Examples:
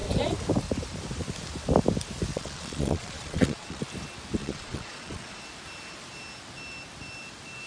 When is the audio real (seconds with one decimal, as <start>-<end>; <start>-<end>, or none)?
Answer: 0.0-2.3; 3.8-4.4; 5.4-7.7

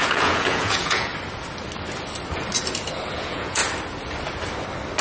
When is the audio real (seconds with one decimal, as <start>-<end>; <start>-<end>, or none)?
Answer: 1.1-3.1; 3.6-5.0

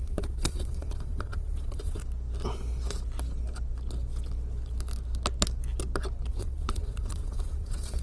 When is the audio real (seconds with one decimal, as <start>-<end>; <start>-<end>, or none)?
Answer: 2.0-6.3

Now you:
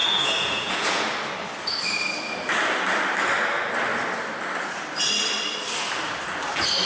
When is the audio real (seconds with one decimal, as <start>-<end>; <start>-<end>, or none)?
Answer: 1.1-6.9

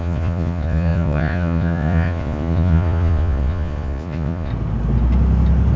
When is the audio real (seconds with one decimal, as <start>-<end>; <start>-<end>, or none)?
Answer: 4.5-5.8

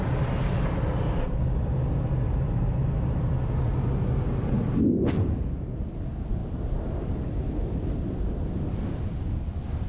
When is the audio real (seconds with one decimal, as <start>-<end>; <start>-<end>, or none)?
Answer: 0.0-9.9